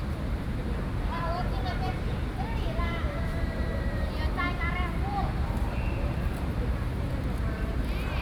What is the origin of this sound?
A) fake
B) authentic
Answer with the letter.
A